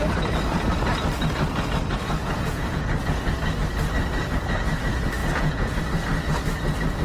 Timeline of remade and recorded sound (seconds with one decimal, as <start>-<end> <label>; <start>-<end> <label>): 0.0-2.2 recorded; 2.2-2.8 remade; 2.8-5.2 recorded; 5.2-5.8 remade; 5.8-7.0 recorded